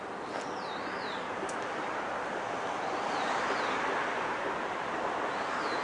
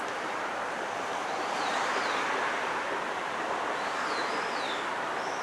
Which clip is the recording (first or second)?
first